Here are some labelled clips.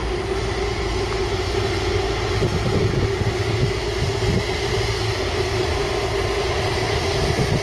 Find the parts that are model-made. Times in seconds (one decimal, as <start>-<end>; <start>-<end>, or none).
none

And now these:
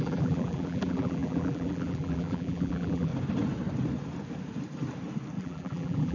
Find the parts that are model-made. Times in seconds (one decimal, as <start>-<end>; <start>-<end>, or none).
0.0-3.1; 5.4-6.1

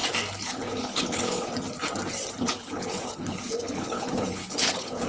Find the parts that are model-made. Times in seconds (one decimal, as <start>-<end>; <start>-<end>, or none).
0.5-1.5; 2.4-5.1